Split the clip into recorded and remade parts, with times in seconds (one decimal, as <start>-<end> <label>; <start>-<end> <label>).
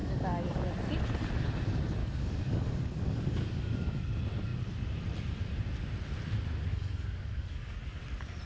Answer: 0.0-0.6 remade; 0.6-2.0 recorded; 2.0-4.0 remade; 4.0-6.7 recorded; 6.7-8.0 remade; 8.0-8.5 recorded